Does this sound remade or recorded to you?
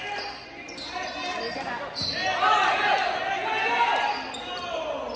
recorded